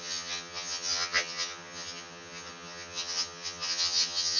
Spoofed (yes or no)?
yes